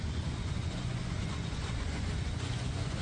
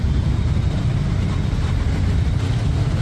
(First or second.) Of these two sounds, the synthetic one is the first